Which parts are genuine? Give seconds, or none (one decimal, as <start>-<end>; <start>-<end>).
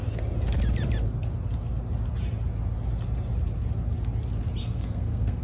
0.0-4.6